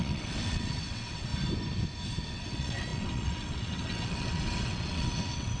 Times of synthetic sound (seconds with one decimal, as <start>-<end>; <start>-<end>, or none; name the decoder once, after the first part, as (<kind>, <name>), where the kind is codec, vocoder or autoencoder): 0.0-1.3 (vocoder, WaveNeXt); 2.3-5.6